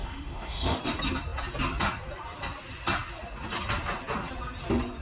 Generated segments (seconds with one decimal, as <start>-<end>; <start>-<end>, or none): 0.0-0.8